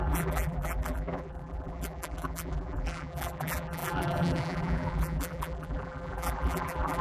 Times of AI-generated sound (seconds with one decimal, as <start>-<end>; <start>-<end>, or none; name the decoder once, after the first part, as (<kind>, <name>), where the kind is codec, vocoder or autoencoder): 0.0-7.0 (vocoder, BigVGAN v2)